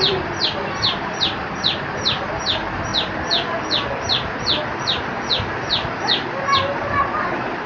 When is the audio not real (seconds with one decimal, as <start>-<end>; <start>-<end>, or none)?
0.0-2.9